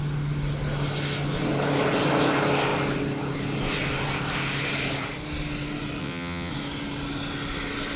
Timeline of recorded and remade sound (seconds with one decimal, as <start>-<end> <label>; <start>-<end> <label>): 0.0-6.0 recorded; 6.0-6.5 remade; 6.5-8.0 recorded